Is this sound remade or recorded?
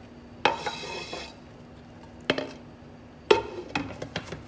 recorded